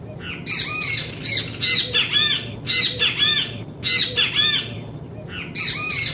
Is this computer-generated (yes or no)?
no